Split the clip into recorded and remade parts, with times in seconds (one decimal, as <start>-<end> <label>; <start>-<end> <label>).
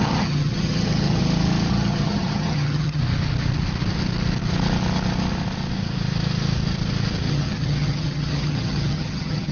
0.0-1.2 remade; 1.2-1.7 recorded; 1.7-3.0 remade; 3.0-7.3 recorded; 7.3-9.5 remade